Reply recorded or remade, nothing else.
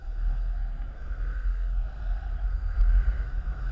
remade